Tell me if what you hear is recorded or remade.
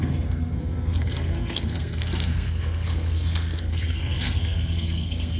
remade